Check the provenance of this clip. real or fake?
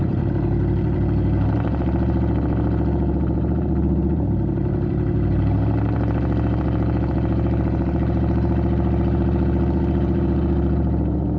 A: fake